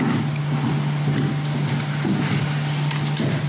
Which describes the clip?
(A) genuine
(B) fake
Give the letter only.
A